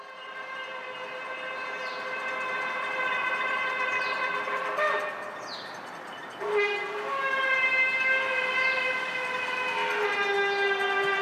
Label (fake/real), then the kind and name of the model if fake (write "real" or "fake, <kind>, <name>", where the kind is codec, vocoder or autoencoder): real